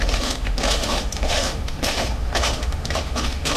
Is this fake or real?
fake